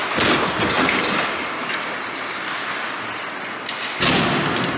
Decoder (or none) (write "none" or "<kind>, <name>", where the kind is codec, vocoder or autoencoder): none